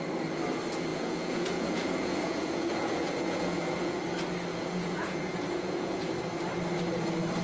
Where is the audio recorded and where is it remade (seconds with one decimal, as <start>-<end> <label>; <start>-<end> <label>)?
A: 0.0-0.9 recorded; 0.9-4.0 remade; 4.0-4.5 recorded; 4.5-6.1 remade; 6.1-7.4 recorded

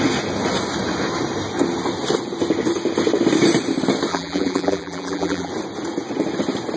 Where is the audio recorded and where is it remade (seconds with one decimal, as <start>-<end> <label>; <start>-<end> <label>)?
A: 0.0-4.1 recorded; 4.1-5.5 remade; 5.5-6.8 recorded

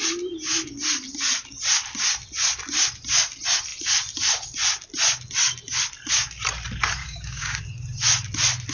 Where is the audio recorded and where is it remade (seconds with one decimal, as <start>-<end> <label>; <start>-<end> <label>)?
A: 0.0-7.0 recorded; 7.0-7.6 remade; 7.6-8.7 recorded